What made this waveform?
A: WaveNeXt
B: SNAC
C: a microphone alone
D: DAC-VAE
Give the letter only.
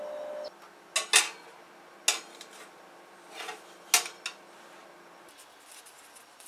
C